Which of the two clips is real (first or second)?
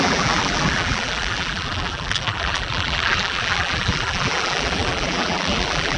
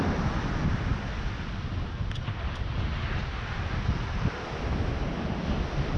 second